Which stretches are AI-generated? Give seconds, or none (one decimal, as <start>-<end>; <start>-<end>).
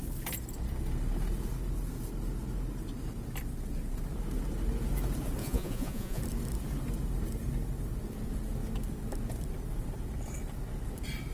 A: 5.4-6.2